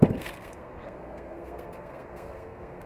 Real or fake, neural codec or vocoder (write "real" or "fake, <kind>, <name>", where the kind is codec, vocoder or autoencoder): fake, codec, SNAC